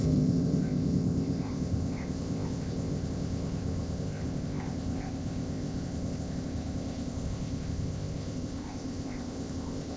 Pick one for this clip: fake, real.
fake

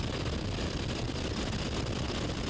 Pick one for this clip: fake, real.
real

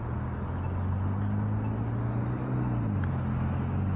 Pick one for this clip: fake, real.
real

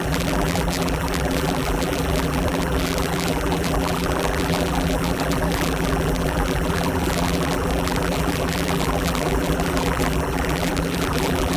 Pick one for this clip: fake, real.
fake